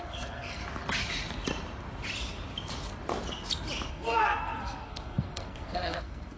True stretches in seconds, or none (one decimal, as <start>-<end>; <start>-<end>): 0.6-3.9